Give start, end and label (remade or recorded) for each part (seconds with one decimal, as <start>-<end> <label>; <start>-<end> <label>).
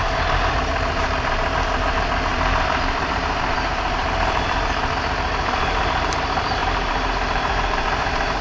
0.0-8.4 remade